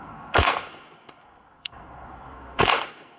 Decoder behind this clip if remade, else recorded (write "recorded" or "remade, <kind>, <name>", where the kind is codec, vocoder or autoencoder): remade, codec, SNAC